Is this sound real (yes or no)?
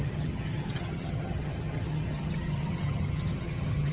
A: no